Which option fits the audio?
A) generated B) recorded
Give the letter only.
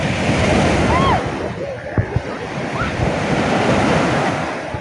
B